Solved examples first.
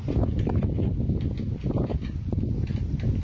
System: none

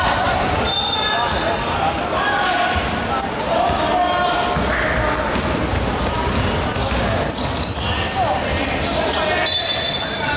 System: none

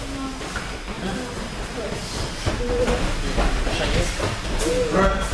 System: none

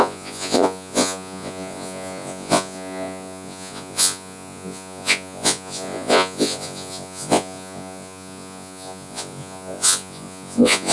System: vocoder, Vocos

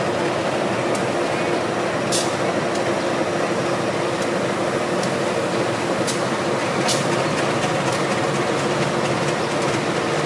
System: none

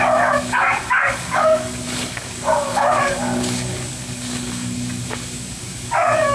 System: codec, DAC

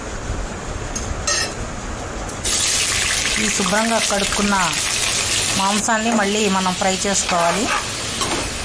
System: none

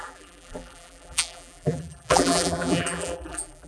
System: vocoder, BigVGAN v2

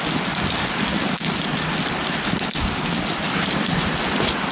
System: none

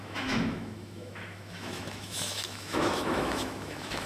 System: autoencoder, DAC-VAE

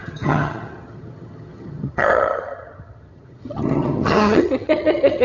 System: vocoder, HiFi-GAN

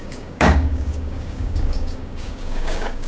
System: codec, DAC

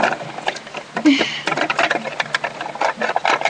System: none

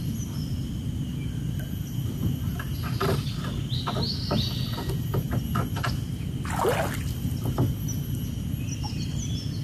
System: none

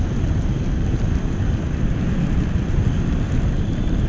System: none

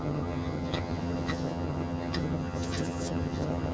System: vocoder, HiFi-GAN